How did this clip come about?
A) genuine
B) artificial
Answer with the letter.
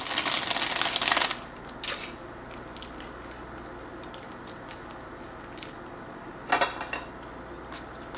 A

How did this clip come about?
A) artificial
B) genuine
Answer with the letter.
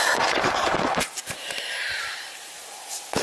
A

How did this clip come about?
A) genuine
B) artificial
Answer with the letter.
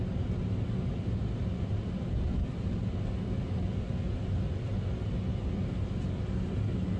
A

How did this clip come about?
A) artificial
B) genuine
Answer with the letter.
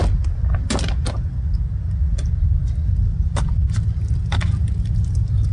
B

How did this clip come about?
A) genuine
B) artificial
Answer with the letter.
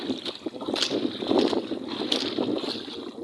A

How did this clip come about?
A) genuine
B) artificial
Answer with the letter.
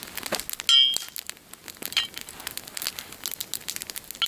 A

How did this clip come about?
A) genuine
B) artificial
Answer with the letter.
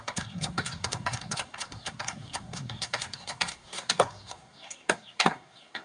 B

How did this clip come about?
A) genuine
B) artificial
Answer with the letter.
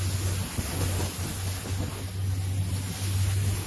A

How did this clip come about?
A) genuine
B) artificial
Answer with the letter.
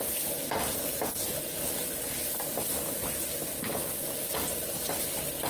A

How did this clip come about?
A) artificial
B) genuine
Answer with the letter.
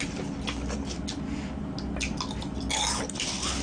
B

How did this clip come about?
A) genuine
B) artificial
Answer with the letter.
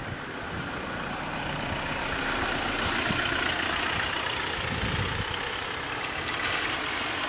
B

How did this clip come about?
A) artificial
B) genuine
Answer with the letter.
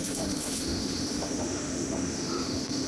A